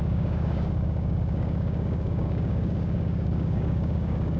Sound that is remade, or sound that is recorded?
remade